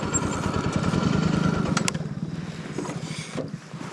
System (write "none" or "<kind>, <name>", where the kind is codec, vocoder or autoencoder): none